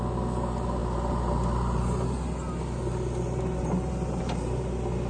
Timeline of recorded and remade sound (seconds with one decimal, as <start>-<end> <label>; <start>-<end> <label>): 0.0-5.1 recorded